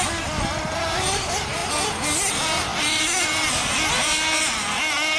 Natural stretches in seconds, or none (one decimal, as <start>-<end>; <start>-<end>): 0.0-5.2